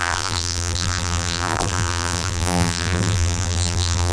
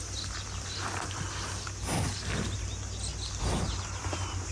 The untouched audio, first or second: second